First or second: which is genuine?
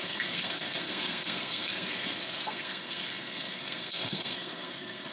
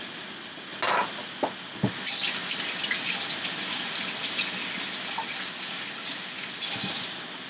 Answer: second